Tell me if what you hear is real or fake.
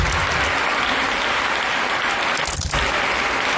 real